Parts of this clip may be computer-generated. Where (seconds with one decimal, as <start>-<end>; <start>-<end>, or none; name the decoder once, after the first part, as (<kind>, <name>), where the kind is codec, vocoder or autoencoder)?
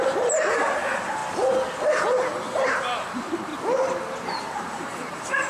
0.0-1.2 (vocoder, BigVGAN v2); 2.0-3.5; 4.5-5.5